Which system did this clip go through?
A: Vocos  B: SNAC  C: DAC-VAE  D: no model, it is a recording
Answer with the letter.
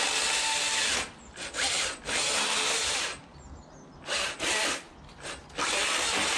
D